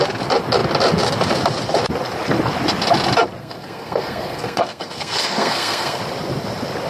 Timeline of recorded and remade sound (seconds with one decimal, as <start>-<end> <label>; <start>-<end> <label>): 0.0-3.4 recorded; 3.4-6.0 remade; 6.0-6.9 recorded

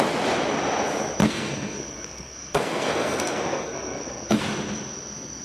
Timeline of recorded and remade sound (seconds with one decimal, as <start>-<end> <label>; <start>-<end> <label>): 0.0-1.2 recorded; 1.2-4.4 remade; 4.4-5.4 recorded

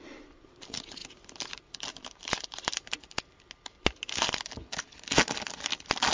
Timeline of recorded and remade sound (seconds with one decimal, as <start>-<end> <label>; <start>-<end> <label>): 0.0-6.1 recorded

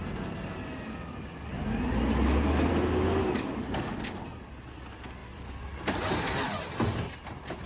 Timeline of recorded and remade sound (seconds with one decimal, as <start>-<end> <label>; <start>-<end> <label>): 0.0-7.7 recorded

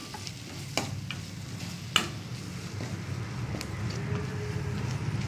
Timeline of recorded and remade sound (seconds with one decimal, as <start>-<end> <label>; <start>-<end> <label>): 0.0-5.3 recorded

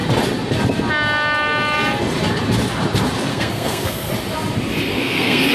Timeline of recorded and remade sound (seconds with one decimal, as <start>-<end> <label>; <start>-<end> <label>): 0.0-3.3 recorded; 3.3-4.1 remade; 4.1-4.9 recorded; 4.9-5.5 remade

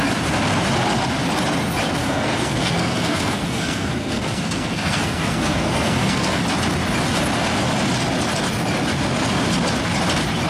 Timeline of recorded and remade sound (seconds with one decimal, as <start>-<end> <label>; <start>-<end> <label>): 0.0-2.0 recorded; 2.0-6.4 remade; 6.4-10.5 recorded